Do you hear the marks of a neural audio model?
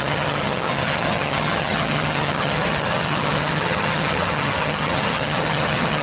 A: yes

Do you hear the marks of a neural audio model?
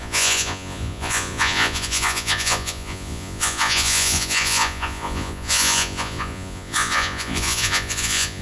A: yes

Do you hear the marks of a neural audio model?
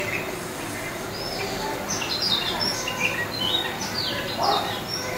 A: no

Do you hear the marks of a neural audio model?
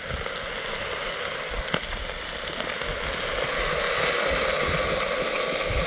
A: no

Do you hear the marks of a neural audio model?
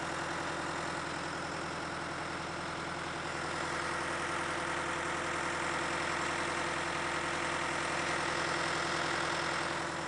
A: no